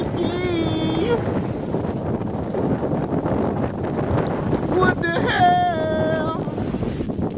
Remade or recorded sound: recorded